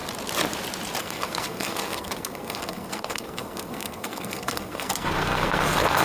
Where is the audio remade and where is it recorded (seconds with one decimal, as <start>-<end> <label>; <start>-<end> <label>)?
0.0-1.0 recorded; 1.0-6.0 remade